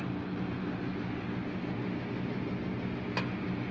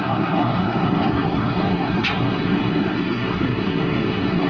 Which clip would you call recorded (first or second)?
first